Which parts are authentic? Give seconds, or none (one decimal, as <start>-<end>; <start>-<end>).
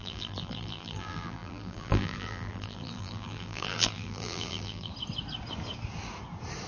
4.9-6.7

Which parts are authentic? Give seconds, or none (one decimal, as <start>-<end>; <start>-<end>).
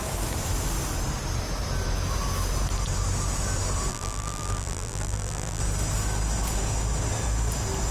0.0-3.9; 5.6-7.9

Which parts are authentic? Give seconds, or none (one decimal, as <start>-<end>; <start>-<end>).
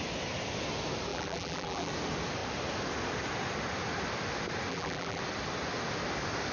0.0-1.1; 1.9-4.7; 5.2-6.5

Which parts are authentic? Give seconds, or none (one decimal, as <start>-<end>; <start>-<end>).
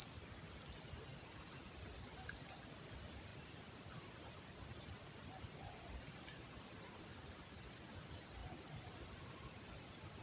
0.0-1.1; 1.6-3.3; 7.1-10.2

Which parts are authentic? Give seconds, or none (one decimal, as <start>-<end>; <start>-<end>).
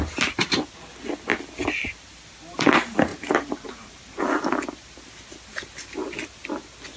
0.0-3.1; 4.2-7.0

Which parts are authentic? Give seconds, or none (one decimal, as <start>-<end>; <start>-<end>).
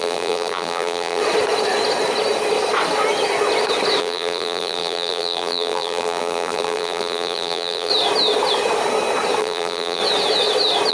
1.2-4.0; 7.9-9.4; 10.0-10.9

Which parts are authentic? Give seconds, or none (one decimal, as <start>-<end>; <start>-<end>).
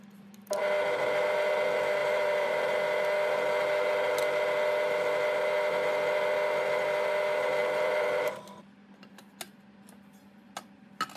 0.0-2.0; 2.7-7.6; 8.3-11.2